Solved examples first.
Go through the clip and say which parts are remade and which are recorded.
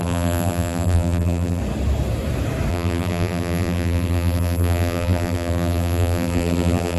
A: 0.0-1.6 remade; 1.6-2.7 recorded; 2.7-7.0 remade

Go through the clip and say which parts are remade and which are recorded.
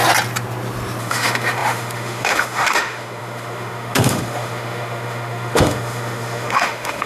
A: 0.0-1.0 recorded; 1.0-7.1 remade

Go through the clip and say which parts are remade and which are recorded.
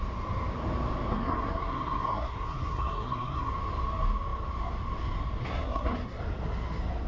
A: 0.0-1.1 recorded; 1.1-3.5 remade; 3.5-5.4 recorded; 5.4-6.2 remade; 6.2-7.1 recorded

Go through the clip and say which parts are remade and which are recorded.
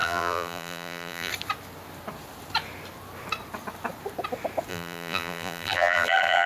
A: 0.0-1.3 remade; 1.3-4.7 recorded; 4.7-6.5 remade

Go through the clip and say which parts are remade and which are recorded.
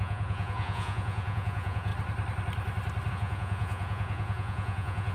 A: 0.0-1.9 remade; 1.9-3.1 recorded; 3.1-5.1 remade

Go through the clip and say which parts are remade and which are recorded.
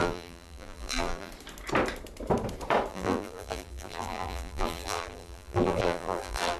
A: 0.0-1.3 remade; 1.3-2.9 recorded; 2.9-6.6 remade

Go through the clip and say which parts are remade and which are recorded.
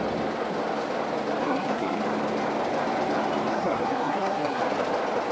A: 0.0-1.4 recorded; 1.4-2.0 remade; 2.0-3.5 recorded; 3.5-4.6 remade; 4.6-5.3 recorded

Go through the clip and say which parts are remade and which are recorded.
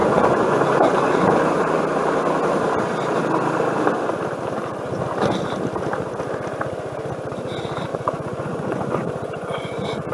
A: 0.0-1.8 remade; 1.8-7.9 recorded; 7.9-10.1 remade